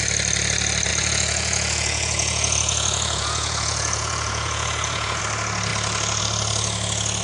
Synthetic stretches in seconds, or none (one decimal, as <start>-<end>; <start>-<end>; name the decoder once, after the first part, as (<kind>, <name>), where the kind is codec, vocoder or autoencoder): 0.9-5.2 (vocoder, Vocos)